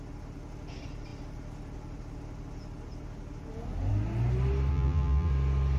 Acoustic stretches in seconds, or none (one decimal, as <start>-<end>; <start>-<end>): 0.0-4.7; 5.3-5.8